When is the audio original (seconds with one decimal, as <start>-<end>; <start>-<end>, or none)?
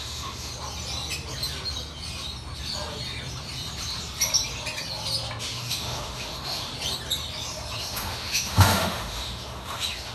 0.5-5.4; 6.7-7.8